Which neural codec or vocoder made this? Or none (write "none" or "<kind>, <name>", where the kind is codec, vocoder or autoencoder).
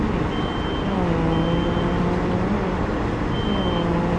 none